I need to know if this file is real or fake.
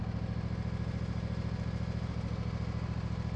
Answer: real